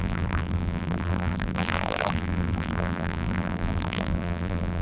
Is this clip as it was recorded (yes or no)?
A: no